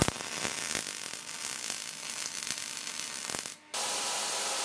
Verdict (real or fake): real